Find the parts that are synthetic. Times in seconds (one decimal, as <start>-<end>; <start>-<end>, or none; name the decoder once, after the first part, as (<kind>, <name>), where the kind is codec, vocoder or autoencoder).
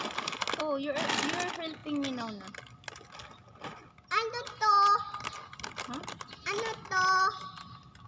none